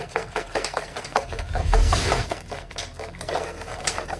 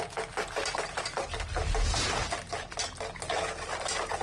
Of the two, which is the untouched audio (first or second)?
second